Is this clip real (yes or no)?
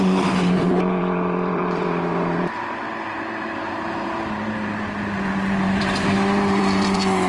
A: no